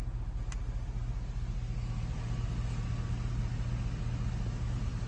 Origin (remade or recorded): recorded